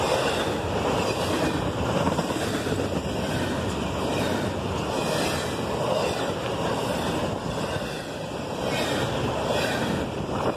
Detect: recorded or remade recorded